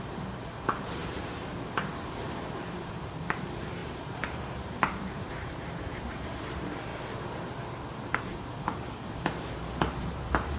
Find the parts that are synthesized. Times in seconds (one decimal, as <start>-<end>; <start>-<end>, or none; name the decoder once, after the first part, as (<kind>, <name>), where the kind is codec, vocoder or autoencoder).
0.0-6.9 (vocoder, BigVGAN v2); 8.2-10.6